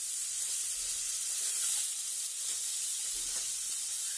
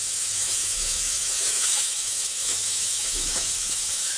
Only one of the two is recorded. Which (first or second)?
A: first